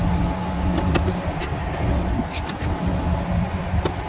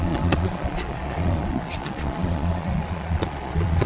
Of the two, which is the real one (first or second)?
first